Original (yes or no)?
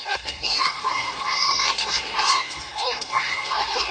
no